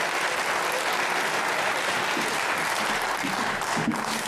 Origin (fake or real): real